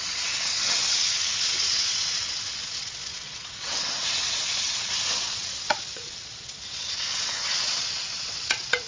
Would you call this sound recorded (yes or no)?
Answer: no